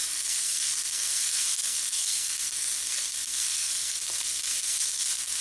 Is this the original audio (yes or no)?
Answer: no